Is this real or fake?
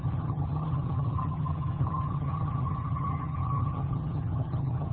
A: fake